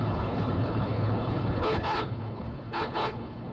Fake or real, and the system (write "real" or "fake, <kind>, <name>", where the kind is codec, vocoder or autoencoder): fake, codec, HILCodec